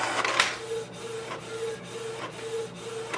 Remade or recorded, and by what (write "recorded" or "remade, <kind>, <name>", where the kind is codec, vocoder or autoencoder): recorded